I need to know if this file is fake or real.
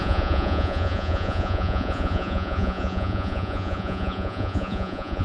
fake